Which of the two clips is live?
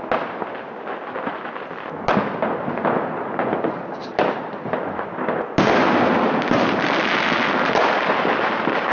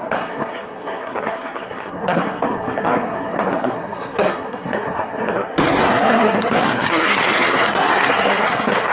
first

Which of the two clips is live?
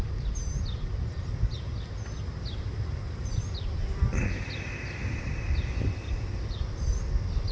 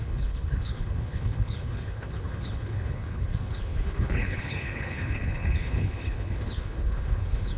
first